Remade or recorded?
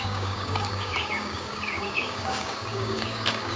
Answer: remade